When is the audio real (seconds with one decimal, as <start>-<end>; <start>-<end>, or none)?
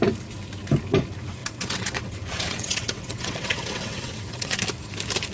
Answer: 0.0-1.4; 4.6-5.3